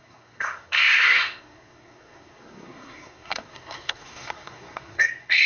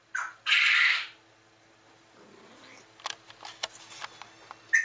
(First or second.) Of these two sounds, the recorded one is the second